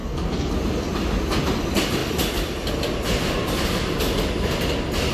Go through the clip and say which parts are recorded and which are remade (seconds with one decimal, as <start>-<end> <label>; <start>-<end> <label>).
0.0-0.5 remade; 0.5-5.1 recorded